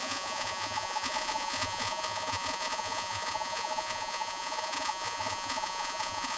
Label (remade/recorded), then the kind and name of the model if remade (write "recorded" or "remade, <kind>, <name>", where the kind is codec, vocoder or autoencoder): remade, vocoder, Vocos